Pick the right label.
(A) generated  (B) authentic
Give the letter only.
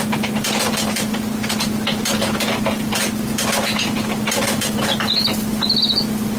B